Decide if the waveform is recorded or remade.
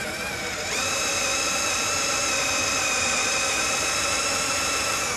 remade